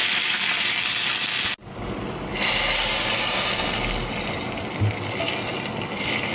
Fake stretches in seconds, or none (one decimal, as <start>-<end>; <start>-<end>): none